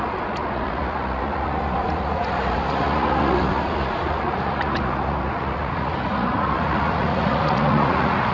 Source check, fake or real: fake